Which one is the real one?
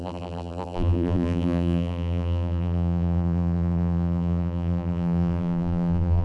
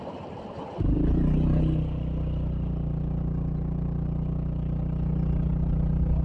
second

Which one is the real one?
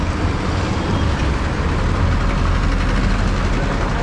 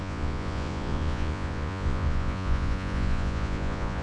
first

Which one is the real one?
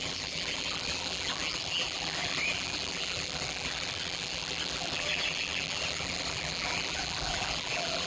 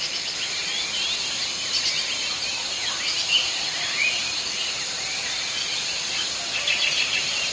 second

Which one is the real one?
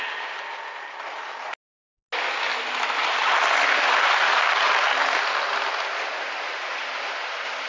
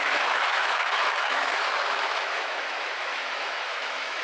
first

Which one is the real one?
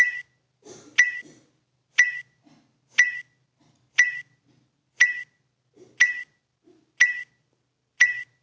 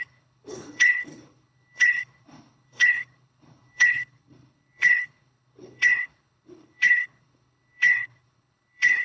first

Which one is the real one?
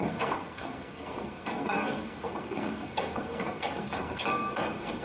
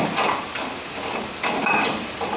second